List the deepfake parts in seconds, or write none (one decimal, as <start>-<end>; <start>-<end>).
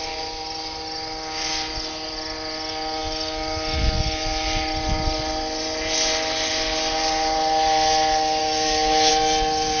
8.4-9.1